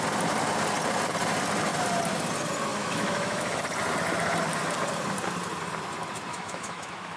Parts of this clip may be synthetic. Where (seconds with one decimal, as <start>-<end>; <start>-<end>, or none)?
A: 2.7-3.6; 6.3-7.2